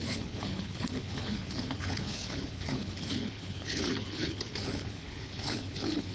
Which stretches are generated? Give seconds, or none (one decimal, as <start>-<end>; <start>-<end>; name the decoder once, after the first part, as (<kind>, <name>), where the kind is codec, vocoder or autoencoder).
0.0-6.1 (codec, HILCodec)